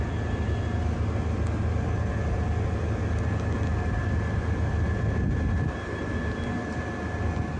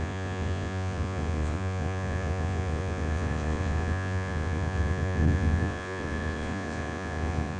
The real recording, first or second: first